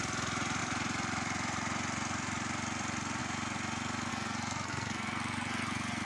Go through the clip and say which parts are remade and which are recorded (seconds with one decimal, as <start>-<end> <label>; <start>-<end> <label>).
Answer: 0.0-4.1 recorded; 4.1-6.1 remade